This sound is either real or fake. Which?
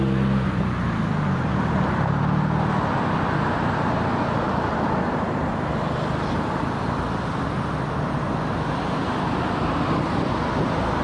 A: real